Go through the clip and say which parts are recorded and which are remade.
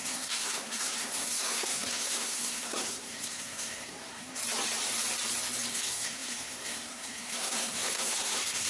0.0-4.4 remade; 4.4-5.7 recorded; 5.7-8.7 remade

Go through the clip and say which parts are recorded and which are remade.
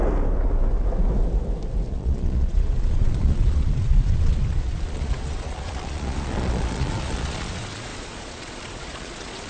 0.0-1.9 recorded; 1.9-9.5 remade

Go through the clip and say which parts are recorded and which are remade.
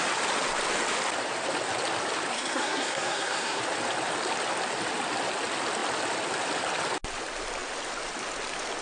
0.0-2.3 recorded; 2.3-3.6 remade; 3.6-8.8 recorded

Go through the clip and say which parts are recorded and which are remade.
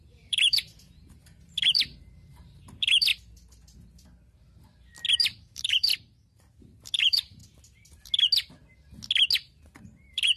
0.0-3.1 remade; 3.1-5.1 recorded; 5.1-5.9 remade; 5.9-6.6 recorded; 6.6-7.4 remade; 7.4-9.8 recorded; 9.8-10.4 remade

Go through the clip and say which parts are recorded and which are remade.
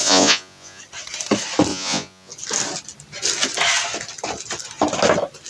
0.0-0.8 remade; 0.8-1.7 recorded; 1.7-2.3 remade; 2.3-5.5 recorded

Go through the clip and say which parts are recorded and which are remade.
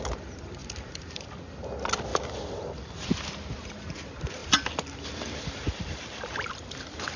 0.0-0.6 recorded; 0.6-1.4 remade; 1.4-2.1 recorded; 2.1-3.1 remade; 3.1-4.4 recorded; 4.4-6.5 remade; 6.5-7.2 recorded